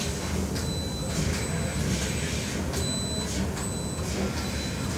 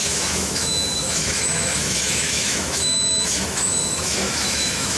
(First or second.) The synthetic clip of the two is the second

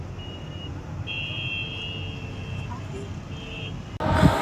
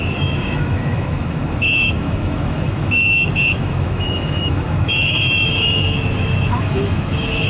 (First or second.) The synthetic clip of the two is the second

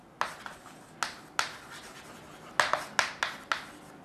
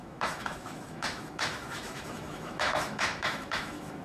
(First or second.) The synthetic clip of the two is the second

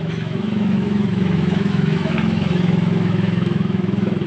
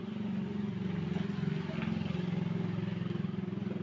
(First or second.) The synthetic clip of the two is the first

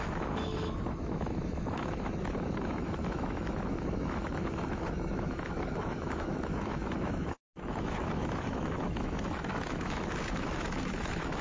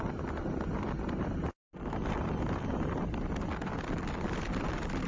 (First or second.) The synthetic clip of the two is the first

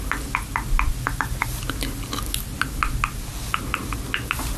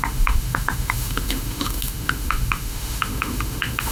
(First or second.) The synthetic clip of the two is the second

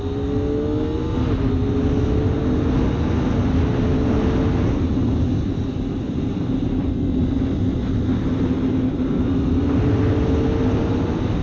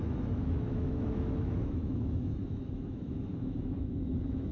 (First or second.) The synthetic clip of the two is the second